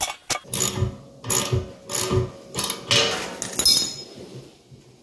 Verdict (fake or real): real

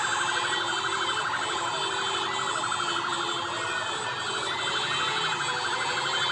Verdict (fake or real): real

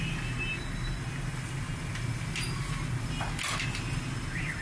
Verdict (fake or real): real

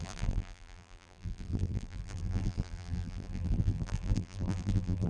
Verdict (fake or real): fake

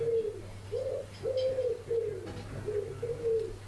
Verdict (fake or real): real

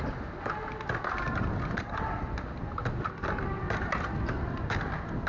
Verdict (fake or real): real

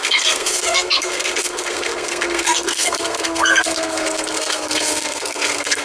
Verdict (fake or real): fake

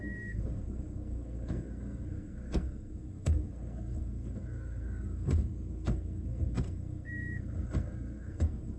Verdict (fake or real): fake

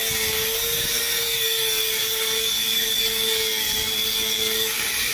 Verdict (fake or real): fake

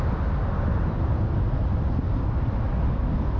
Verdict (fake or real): real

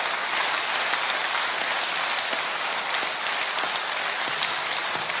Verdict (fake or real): real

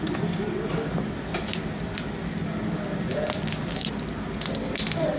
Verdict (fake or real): real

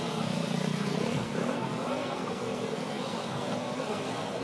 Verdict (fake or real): fake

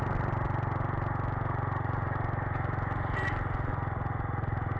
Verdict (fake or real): real